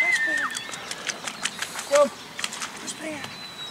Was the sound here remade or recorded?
recorded